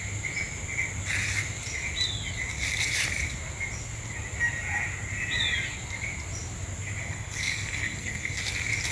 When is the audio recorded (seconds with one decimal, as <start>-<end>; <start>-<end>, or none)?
0.0-7.0; 8.4-8.9